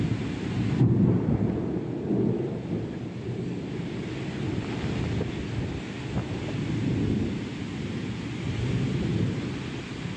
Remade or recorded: recorded